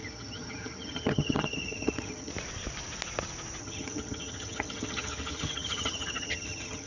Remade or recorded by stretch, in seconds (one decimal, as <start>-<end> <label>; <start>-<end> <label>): 0.0-2.3 remade; 2.3-3.6 recorded; 3.6-6.9 remade